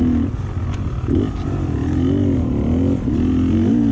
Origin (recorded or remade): recorded